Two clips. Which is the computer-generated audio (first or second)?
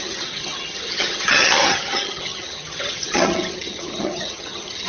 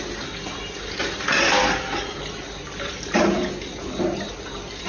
first